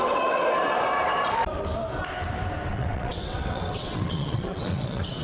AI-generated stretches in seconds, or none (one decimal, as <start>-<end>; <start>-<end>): 0.0-0.4; 2.7-5.2